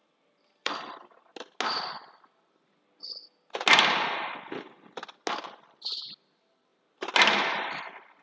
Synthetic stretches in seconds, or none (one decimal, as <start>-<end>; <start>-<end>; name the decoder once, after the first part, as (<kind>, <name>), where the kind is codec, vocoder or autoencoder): 0.0-0.7 (vocoder, BigVGAN v2); 6.7-8.2